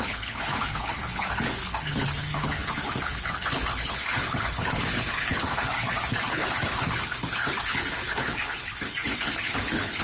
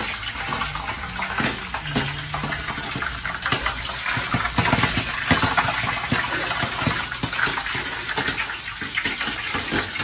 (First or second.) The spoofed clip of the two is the first